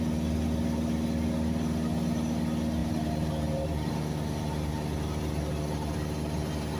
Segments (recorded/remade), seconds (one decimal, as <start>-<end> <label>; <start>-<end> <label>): 0.0-2.8 recorded; 2.8-3.9 remade; 3.9-6.8 recorded

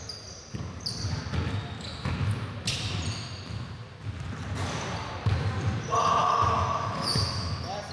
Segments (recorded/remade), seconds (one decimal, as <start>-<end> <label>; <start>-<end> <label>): 0.0-6.2 recorded; 6.2-7.5 remade; 7.5-7.9 recorded

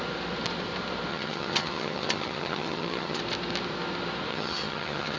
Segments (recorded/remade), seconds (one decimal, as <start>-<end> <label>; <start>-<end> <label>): 0.0-1.1 recorded; 1.1-3.2 remade; 3.2-4.3 recorded; 4.3-5.2 remade

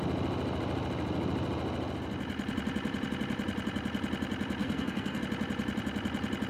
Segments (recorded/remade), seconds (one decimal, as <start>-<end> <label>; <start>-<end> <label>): 0.0-4.6 recorded; 4.6-5.2 remade; 5.2-6.5 recorded

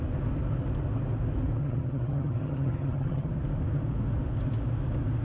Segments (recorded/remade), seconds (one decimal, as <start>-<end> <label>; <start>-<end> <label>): 0.0-1.6 recorded; 1.6-3.3 remade; 3.3-5.2 recorded

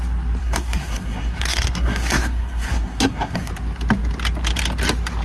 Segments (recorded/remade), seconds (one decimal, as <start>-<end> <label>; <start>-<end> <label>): 0.0-0.4 recorded; 0.4-3.5 remade; 3.5-5.2 recorded